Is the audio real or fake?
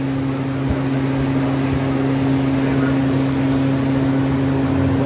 real